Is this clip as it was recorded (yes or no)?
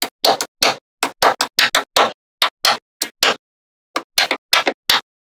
yes